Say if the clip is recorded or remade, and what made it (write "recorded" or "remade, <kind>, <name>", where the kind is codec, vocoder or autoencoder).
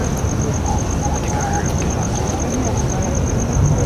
recorded